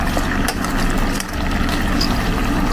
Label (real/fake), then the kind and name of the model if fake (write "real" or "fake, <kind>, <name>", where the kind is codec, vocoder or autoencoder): real